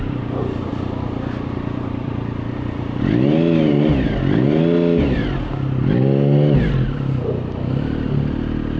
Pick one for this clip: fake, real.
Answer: real